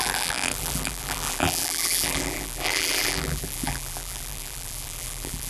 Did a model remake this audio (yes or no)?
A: yes